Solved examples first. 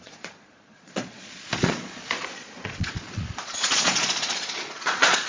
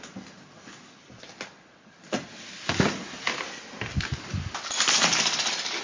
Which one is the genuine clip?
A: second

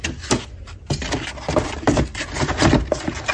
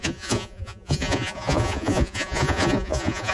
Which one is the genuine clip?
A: first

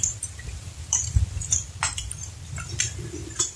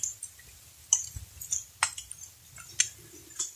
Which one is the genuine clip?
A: second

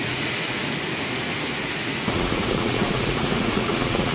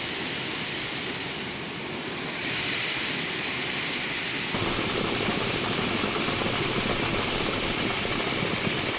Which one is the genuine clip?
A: second